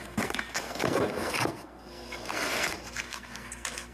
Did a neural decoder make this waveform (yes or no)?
yes